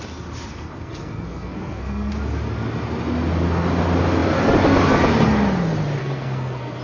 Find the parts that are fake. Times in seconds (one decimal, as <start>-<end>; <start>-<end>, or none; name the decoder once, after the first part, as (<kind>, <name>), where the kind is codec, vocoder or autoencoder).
0.5-2.1 (codec, SNAC); 6.0-6.8